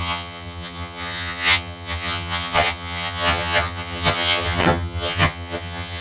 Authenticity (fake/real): fake